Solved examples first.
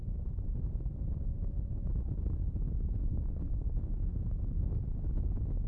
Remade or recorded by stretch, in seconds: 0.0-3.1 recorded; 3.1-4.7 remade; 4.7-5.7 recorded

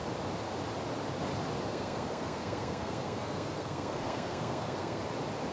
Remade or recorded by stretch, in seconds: 0.0-1.7 recorded; 1.7-5.0 remade; 5.0-5.5 recorded

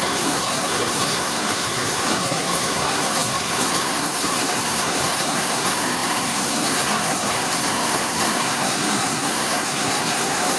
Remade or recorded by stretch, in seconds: 0.0-10.6 remade

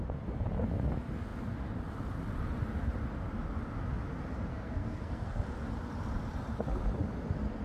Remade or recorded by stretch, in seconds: 0.0-4.5 recorded; 4.5-5.4 remade; 5.4-7.6 recorded

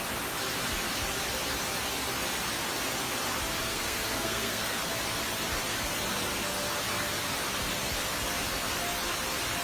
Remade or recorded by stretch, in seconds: 0.0-3.6 recorded; 3.6-4.8 remade; 4.8-9.6 recorded

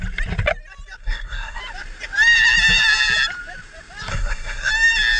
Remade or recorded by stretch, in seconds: 0.0-1.0 recorded; 1.0-1.6 remade; 1.6-4.1 recorded; 4.1-4.7 remade; 4.7-5.2 recorded